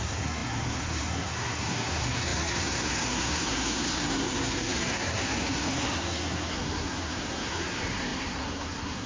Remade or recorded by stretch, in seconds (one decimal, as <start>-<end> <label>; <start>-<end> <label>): 0.0-9.1 remade